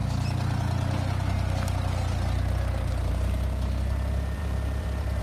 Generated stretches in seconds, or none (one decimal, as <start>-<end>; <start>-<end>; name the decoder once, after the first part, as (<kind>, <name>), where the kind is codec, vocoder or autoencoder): none